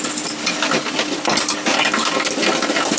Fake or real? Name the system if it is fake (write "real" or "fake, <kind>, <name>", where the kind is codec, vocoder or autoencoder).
real